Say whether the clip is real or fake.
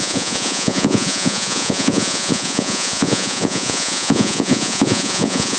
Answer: fake